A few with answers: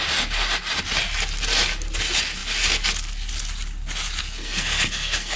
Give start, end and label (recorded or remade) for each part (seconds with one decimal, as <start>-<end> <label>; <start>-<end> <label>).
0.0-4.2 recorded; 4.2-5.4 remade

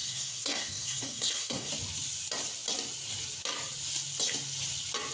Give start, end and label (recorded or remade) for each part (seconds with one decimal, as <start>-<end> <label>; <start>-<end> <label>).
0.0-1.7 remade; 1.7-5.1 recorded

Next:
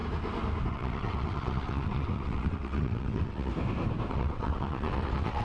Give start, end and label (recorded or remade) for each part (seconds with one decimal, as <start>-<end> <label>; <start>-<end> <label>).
0.0-0.7 recorded; 0.7-3.5 remade; 3.5-4.1 recorded; 4.1-5.4 remade

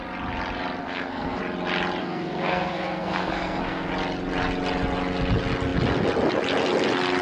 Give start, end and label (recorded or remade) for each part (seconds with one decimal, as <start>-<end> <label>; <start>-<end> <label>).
0.0-0.8 recorded; 0.8-1.4 remade; 1.4-2.0 recorded; 2.0-3.9 remade; 3.9-7.2 recorded